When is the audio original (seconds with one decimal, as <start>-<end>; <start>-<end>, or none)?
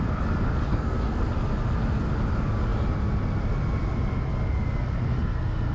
0.0-0.7; 1.3-5.7